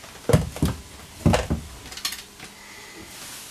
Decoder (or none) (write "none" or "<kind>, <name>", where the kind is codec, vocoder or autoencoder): none